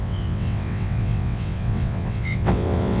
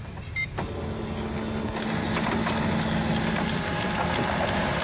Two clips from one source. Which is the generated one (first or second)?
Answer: first